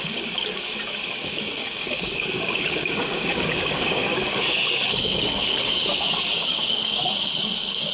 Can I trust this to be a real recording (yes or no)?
no